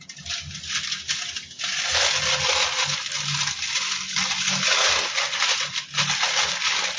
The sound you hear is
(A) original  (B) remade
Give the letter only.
A